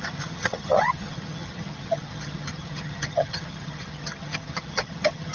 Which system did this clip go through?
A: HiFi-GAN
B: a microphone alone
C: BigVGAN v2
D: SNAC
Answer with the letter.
A